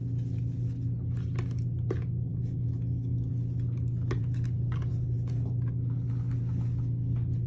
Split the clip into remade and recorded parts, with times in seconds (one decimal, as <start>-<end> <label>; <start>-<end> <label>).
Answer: 0.0-2.3 recorded; 2.3-3.3 remade; 3.3-7.5 recorded